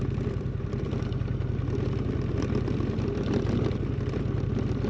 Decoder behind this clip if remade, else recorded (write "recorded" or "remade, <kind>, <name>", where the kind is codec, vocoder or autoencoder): recorded